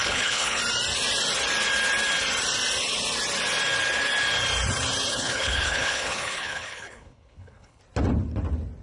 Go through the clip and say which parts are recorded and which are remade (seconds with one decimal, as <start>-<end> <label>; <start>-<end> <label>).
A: 0.0-0.6 remade; 0.6-5.1 recorded; 5.1-7.8 remade; 7.8-8.8 recorded